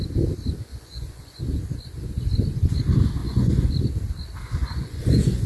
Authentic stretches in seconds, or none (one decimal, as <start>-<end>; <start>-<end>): 0.0-0.7; 1.4-3.2; 3.7-4.6